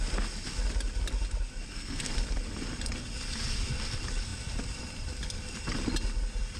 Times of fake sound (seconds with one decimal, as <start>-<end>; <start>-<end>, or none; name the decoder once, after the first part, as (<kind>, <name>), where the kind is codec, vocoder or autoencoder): 1.7-2.2 (codec, SNAC)